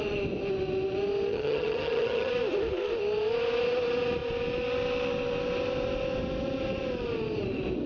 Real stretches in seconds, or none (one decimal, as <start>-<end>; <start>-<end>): 0.0-1.3; 2.3-7.9